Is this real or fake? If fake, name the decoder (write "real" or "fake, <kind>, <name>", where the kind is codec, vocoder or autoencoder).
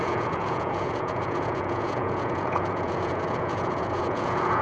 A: fake, vocoder, Vocos